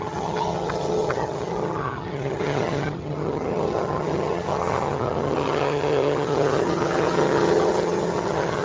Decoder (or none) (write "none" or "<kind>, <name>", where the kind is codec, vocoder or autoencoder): vocoder, HiFi-GAN